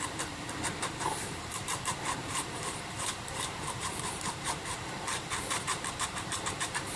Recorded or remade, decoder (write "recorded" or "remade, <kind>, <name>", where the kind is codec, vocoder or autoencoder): remade, vocoder, BigVGAN v2